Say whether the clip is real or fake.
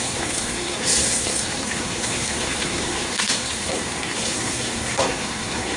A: fake